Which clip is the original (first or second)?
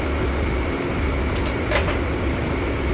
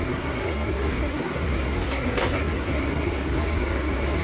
first